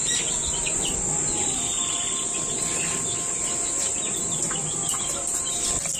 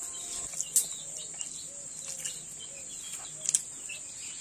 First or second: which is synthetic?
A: first